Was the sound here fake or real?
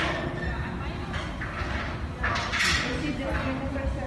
real